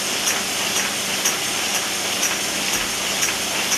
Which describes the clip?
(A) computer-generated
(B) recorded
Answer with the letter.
B